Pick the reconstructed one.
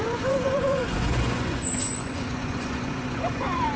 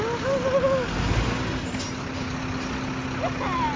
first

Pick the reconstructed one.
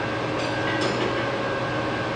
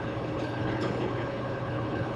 second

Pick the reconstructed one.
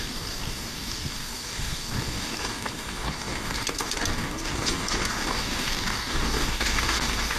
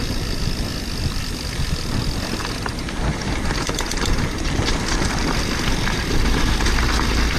first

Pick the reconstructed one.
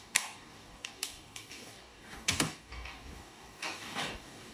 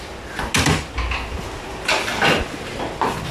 first